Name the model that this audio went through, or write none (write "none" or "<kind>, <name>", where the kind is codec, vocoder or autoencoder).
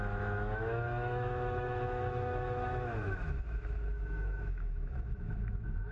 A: autoencoder, DAC-VAE